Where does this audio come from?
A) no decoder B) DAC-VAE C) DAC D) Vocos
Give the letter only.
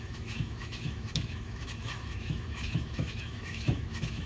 B